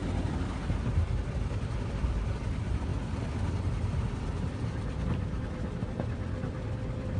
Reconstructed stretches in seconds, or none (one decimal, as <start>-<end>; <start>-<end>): 0.6-2.9; 3.7-7.2